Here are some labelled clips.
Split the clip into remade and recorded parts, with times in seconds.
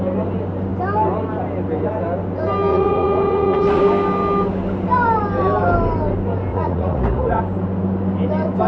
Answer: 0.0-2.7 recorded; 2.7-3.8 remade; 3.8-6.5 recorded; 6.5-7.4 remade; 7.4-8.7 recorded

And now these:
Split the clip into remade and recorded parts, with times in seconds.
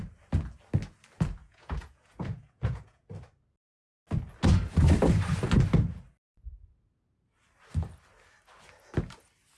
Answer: 0.0-1.4 recorded; 1.4-3.1 remade; 3.1-9.6 recorded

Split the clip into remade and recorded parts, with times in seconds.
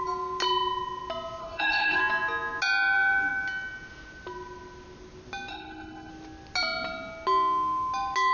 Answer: 0.0-1.4 recorded; 1.4-2.0 remade; 2.0-5.5 recorded; 5.5-6.1 remade; 6.1-8.3 recorded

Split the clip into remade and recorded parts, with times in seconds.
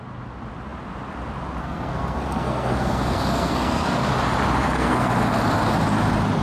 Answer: 0.0-1.6 recorded; 1.6-4.1 remade; 4.1-4.6 recorded; 4.6-5.1 remade; 5.1-6.4 recorded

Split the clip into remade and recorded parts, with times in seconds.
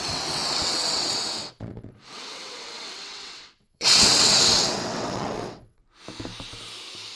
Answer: 0.0-5.8 remade; 5.8-7.2 recorded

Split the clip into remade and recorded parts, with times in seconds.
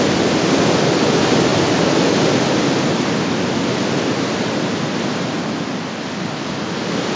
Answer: 0.0-7.2 recorded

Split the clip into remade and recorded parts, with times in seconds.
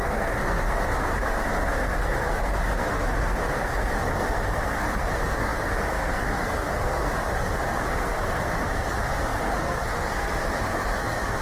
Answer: 0.0-11.4 remade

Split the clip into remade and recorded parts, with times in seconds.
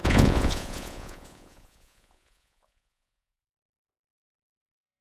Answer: 0.0-5.0 remade